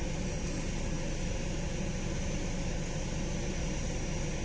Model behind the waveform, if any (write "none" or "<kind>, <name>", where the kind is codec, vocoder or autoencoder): none